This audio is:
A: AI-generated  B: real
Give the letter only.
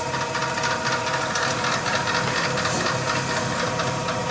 B